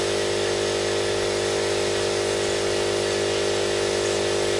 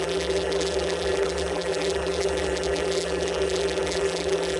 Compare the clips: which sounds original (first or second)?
first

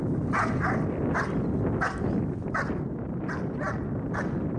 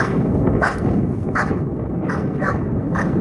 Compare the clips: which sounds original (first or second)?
first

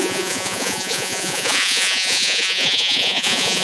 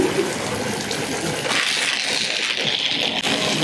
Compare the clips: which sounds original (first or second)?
second